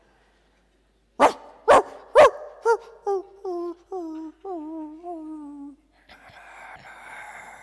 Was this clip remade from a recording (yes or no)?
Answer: no